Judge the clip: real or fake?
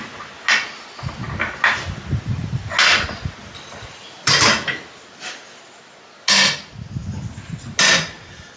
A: real